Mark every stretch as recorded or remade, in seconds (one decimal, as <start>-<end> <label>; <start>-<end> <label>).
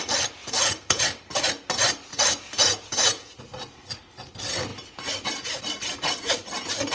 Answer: 0.0-0.4 recorded; 0.4-1.0 remade; 1.0-2.1 recorded; 2.1-3.4 remade; 3.4-6.9 recorded